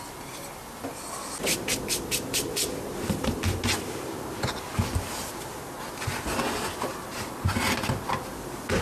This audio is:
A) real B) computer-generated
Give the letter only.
A